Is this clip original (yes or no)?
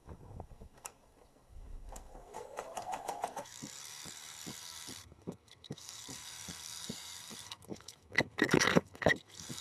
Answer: no